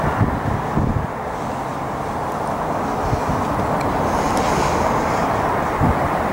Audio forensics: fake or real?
real